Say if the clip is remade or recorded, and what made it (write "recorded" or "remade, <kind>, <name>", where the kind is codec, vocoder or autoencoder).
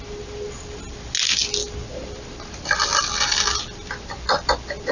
recorded